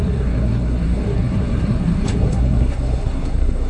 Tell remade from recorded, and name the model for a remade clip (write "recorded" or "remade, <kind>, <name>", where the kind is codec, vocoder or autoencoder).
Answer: remade, codec, SNAC